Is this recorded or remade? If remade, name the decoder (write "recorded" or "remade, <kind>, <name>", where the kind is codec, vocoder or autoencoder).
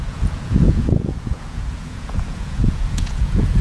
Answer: remade, vocoder, Vocos